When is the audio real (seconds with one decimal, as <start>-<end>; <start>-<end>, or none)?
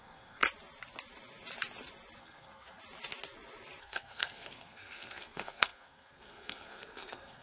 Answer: 0.4-2.2; 2.8-3.8